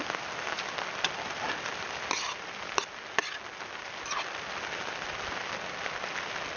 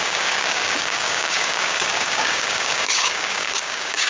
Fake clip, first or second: second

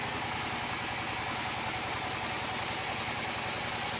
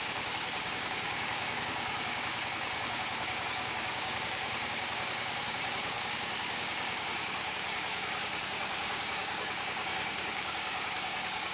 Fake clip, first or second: second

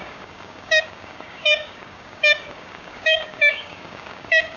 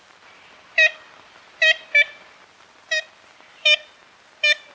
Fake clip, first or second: first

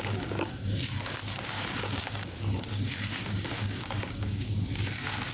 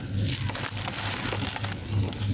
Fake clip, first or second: first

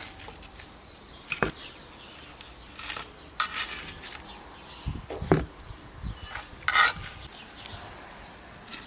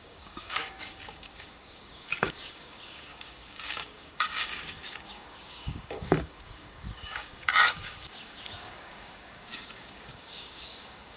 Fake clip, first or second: second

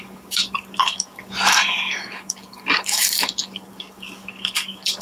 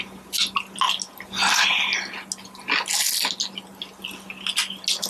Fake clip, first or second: first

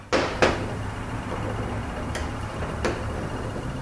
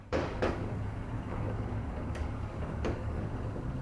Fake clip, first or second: second